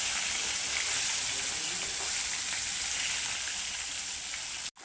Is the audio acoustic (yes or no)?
yes